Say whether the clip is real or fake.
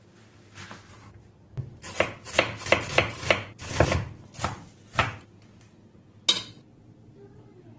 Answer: real